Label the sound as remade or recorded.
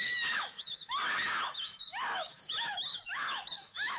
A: remade